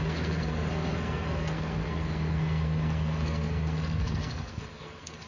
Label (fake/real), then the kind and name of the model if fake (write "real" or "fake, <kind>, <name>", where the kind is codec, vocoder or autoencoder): fake, codec, SNAC